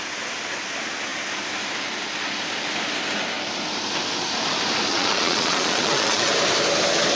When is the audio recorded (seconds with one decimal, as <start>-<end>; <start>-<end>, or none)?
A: 0.0-4.9; 6.3-7.2